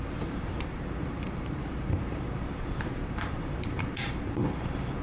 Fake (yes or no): yes